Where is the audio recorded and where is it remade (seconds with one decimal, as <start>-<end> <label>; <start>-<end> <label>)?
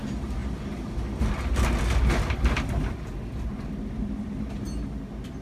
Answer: 0.0-5.4 recorded